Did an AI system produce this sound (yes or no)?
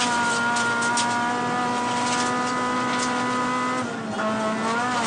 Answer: no